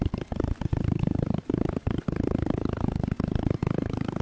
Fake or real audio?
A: real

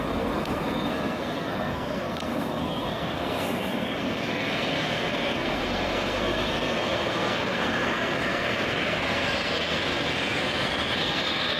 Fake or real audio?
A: fake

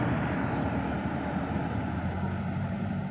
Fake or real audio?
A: real